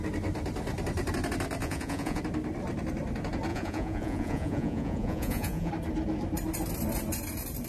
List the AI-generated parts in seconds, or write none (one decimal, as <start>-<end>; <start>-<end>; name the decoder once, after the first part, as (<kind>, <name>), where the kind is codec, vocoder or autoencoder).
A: 1.6-2.2 (vocoder, Vocos); 3.5-5.7